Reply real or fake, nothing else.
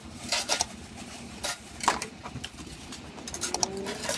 fake